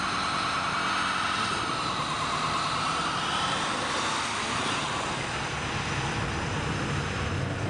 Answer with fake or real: real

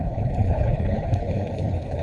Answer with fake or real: fake